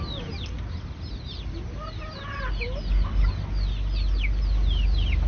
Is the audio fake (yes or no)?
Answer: no